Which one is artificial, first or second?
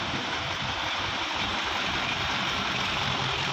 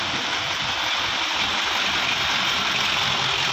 first